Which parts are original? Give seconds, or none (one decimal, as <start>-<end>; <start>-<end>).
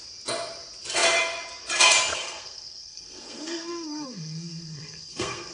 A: 0.0-2.1